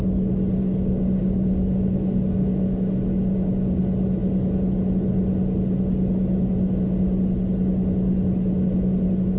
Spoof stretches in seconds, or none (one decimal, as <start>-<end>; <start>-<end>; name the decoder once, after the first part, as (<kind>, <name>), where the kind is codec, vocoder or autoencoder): 0.6-3.8 (codec, DAC)